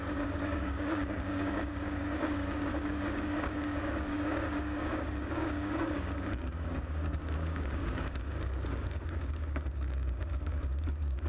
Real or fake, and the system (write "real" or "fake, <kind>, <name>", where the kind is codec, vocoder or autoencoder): fake, codec, DAC